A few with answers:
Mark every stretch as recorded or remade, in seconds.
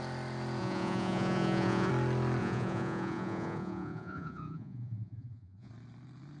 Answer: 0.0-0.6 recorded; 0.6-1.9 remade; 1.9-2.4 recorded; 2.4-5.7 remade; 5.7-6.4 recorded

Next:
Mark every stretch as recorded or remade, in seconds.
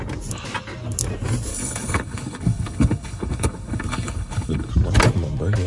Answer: 0.0-1.5 recorded; 1.5-4.7 remade; 4.7-5.7 recorded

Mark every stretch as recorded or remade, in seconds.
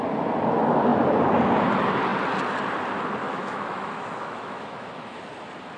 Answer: 0.0-3.2 recorded; 3.2-5.2 remade; 5.2-5.8 recorded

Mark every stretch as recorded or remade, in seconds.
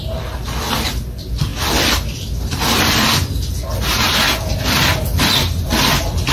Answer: 0.0-6.3 recorded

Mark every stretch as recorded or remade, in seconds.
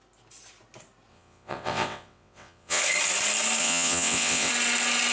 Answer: 0.0-1.1 recorded; 1.1-2.8 remade; 2.8-3.6 recorded; 3.6-4.5 remade; 4.5-5.1 recorded